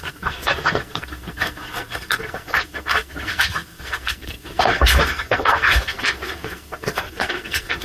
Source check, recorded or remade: remade